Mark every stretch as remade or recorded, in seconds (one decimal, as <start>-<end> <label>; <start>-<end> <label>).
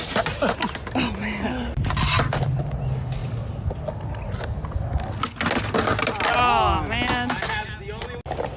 0.0-8.6 recorded